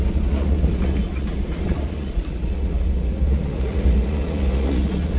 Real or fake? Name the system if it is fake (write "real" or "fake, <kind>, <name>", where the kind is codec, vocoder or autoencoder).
fake, vocoder, Vocos